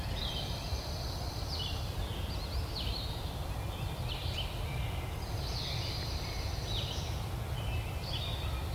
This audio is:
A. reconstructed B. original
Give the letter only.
B